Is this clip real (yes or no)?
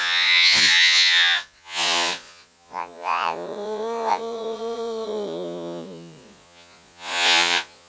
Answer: no